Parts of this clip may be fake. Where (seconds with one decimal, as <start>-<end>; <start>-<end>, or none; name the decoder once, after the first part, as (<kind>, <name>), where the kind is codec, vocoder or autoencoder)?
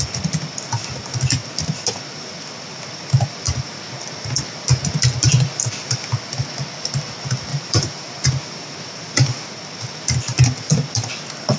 7.5-9.5 (vocoder, BigVGAN v2)